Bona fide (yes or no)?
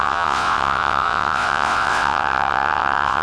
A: no